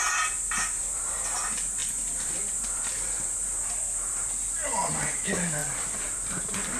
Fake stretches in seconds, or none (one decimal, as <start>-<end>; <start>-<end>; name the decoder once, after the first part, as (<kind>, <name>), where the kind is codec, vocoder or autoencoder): 1.8-2.3 (vocoder, BigVGAN v2); 5.6-6.1